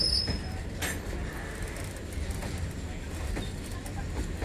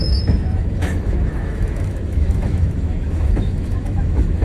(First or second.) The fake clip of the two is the second